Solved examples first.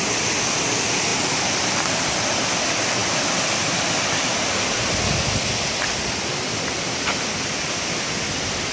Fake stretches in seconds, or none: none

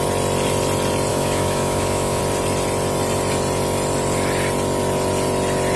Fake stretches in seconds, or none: 1.1-2.2 (autoencoder, DAC-VAE)